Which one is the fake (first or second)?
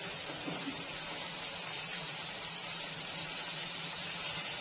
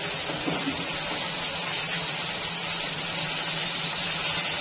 first